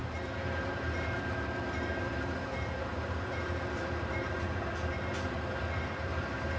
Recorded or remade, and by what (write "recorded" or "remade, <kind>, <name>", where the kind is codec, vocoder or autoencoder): remade, vocoder, BigVGAN v2